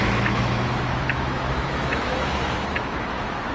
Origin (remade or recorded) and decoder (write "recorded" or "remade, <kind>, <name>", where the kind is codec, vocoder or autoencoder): remade, autoencoder, DAC-VAE